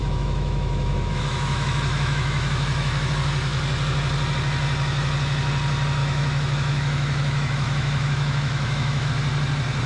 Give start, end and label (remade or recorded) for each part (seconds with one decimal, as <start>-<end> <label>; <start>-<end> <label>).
0.0-3.1 remade; 3.1-6.0 recorded; 6.0-9.1 remade; 9.1-9.9 recorded